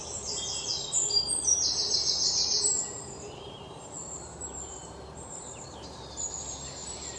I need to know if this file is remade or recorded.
remade